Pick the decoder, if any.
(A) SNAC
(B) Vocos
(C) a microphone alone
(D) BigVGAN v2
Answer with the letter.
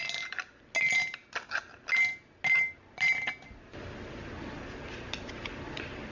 C